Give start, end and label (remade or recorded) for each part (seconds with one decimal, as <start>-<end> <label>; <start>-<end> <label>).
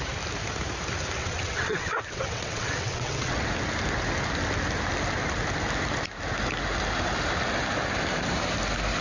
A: 0.0-1.2 recorded; 1.2-3.5 remade; 3.5-9.0 recorded